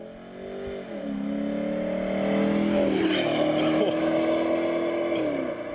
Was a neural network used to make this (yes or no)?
no